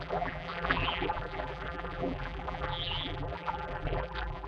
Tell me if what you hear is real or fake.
fake